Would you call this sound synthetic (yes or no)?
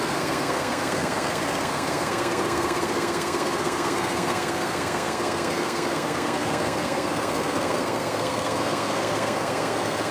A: yes